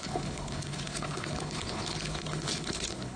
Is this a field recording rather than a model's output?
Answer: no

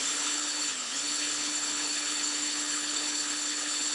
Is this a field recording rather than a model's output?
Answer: no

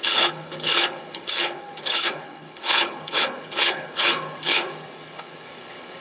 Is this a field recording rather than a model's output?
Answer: no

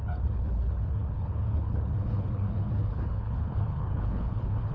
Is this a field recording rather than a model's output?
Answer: no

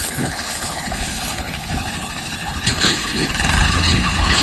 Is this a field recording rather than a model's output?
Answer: no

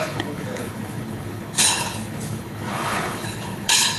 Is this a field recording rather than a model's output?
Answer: no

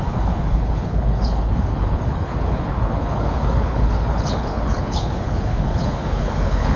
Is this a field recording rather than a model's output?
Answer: no